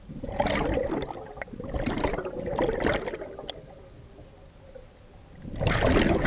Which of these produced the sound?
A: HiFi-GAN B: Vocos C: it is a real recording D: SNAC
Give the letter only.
C